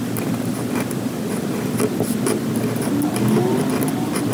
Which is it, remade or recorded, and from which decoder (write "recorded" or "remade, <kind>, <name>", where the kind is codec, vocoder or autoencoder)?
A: recorded